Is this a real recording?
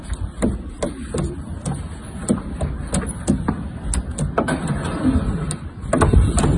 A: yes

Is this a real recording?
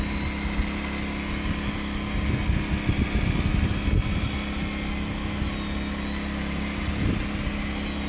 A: yes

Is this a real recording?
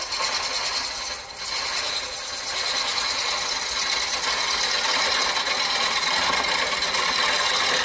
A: yes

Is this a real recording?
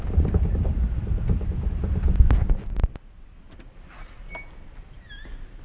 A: yes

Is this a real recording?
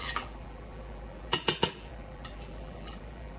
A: no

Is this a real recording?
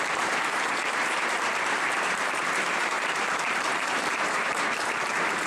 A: no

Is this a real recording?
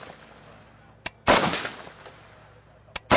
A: yes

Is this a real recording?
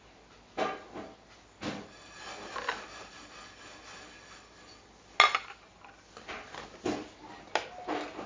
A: yes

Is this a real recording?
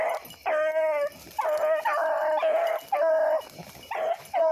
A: yes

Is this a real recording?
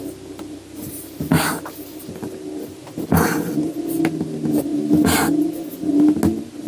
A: yes